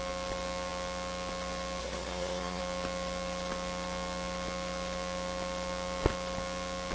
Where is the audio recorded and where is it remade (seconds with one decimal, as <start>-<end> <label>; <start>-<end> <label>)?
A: 0.0-1.8 recorded; 1.8-2.6 remade; 2.6-6.9 recorded